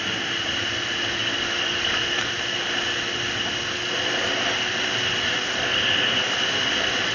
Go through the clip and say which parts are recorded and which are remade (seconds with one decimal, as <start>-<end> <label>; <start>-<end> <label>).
0.0-7.1 recorded